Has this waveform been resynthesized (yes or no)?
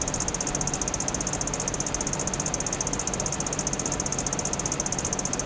no